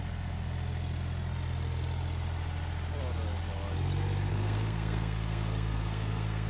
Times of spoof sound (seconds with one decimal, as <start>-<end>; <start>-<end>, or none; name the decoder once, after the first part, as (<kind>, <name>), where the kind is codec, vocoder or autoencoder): 4.3-6.5 (codec, SNAC)